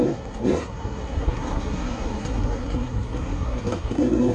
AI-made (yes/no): yes